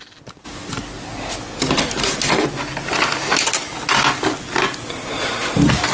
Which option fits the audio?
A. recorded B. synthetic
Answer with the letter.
A